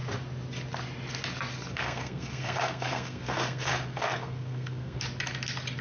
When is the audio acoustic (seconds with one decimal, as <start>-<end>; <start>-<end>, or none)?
0.0-1.7; 5.0-5.8